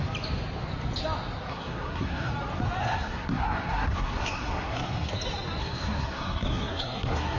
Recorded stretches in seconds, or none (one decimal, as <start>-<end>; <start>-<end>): 0.0-1.5; 2.3-2.8; 5.1-5.6